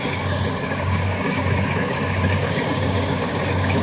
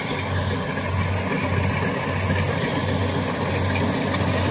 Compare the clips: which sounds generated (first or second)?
first